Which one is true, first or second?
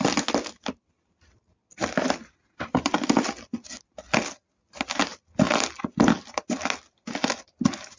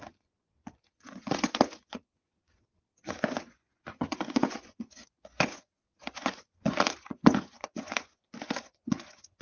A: first